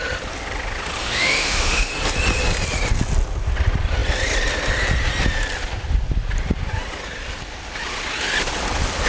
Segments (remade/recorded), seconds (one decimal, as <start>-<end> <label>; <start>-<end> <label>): 0.0-1.0 recorded; 1.0-1.9 remade; 1.9-9.1 recorded

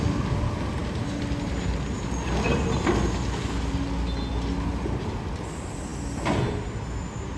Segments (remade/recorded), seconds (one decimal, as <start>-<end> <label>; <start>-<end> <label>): 0.0-7.4 recorded

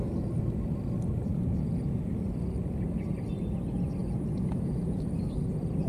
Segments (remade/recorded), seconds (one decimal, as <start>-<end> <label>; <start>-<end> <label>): 0.0-1.3 recorded; 1.3-2.3 remade; 2.3-4.0 recorded; 4.0-4.7 remade; 4.7-5.9 recorded

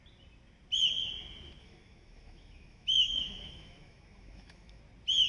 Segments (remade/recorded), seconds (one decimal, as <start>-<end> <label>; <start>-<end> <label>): 0.0-1.6 recorded; 1.6-4.8 remade; 4.8-5.3 recorded

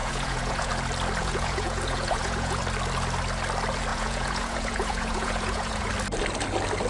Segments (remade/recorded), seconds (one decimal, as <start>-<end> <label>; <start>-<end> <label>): 0.0-0.7 remade; 0.7-1.2 recorded; 1.2-2.6 remade; 2.6-3.9 recorded; 3.9-5.9 remade; 5.9-6.9 recorded

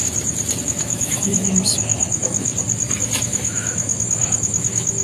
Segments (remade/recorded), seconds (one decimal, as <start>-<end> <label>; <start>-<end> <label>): 0.0-0.6 recorded; 0.6-2.5 remade; 2.5-3.2 recorded; 3.2-5.0 remade

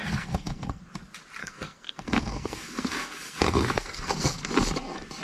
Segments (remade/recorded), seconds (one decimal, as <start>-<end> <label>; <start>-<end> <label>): 0.0-0.8 remade; 0.8-1.4 recorded; 1.4-4.5 remade; 4.5-5.2 recorded